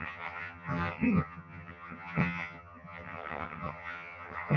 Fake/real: fake